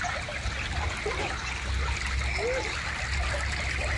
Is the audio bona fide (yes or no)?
yes